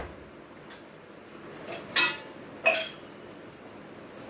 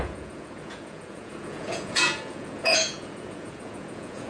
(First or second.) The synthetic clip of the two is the second